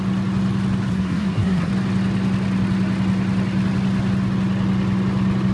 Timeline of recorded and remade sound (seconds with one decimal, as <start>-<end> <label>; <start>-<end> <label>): 0.0-0.9 recorded; 0.9-1.7 remade; 1.7-5.5 recorded